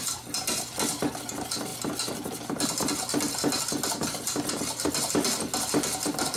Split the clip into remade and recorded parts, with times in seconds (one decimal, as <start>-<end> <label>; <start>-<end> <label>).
0.0-6.4 recorded